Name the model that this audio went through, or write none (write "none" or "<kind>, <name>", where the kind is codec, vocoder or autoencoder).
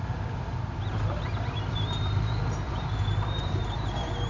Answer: vocoder, BigVGAN v2